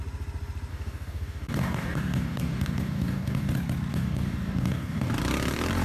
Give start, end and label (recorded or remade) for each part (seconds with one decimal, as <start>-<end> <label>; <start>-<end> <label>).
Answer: 0.0-0.7 recorded; 0.7-3.5 remade; 3.5-3.9 recorded; 3.9-5.1 remade; 5.1-5.8 recorded